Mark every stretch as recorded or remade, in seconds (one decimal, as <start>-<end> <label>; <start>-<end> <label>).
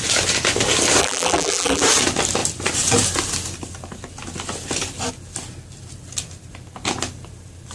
0.0-1.0 recorded; 1.0-1.8 remade; 1.8-7.7 recorded